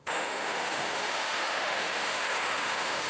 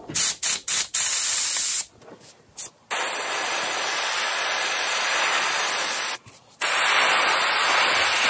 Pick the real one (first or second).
second